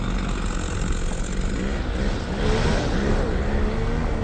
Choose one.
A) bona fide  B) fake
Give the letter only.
A